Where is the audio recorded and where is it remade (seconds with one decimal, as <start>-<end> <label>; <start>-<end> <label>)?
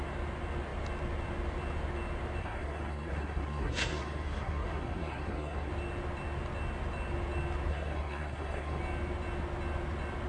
0.0-2.4 recorded; 2.4-5.7 remade; 5.7-7.7 recorded; 7.7-8.8 remade; 8.8-10.3 recorded